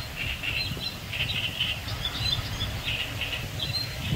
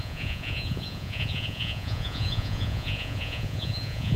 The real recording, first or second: first